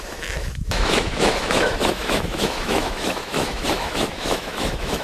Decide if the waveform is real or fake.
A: fake